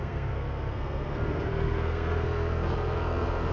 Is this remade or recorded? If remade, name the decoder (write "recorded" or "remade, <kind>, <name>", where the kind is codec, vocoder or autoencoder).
remade, codec, SNAC